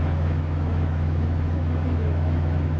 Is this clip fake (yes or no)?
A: yes